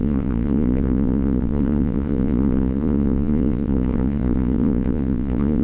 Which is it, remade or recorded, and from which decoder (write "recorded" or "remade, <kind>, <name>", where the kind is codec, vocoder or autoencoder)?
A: remade, vocoder, Vocos